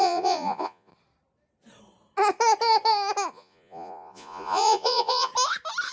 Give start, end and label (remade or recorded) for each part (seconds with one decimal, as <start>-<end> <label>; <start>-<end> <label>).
0.0-0.9 remade; 0.9-3.3 recorded; 3.3-5.3 remade; 5.3-5.9 recorded